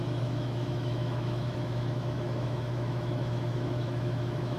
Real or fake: fake